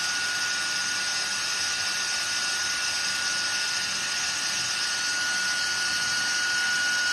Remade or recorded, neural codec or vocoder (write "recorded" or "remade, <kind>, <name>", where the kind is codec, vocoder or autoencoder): recorded